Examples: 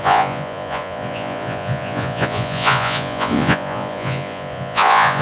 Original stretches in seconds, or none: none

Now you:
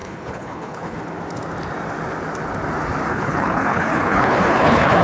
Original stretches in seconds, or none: 1.0-3.1

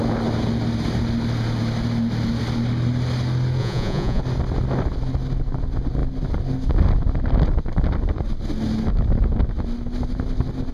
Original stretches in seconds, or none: 0.0-3.6; 4.2-10.7

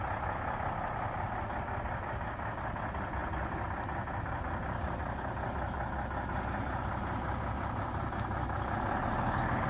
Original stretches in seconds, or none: 0.0-9.7

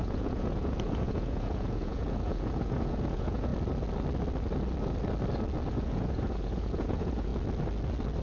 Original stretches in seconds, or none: 3.5-5.7; 7.3-8.2